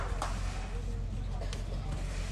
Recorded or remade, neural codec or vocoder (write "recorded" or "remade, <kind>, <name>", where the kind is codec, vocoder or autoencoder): recorded